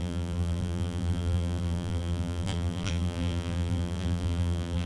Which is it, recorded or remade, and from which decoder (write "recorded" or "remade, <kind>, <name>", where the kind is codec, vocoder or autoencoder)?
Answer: remade, vocoder, BigVGAN v2